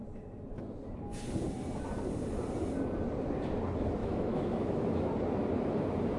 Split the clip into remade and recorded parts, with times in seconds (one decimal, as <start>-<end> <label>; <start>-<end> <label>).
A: 0.0-4.0 recorded; 4.0-5.1 remade; 5.1-6.2 recorded